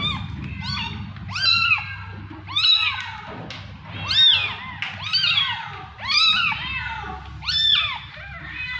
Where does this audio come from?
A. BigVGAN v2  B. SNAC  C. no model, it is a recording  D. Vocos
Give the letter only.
C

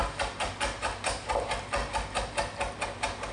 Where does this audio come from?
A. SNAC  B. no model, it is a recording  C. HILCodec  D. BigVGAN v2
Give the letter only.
B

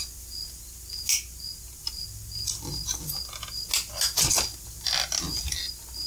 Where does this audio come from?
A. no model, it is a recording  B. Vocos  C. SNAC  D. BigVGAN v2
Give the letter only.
A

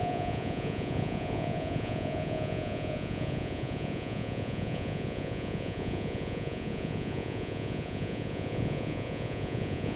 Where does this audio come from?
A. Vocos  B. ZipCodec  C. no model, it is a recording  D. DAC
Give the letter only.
A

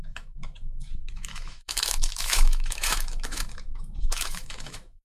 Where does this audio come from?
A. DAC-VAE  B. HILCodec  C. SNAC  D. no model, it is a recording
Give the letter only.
A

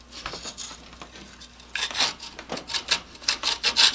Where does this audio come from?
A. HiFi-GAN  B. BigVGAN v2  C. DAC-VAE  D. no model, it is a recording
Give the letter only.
D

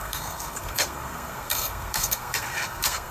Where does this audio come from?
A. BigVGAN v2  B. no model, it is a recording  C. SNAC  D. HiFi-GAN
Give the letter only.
C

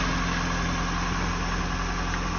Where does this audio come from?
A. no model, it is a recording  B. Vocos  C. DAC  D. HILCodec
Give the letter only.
A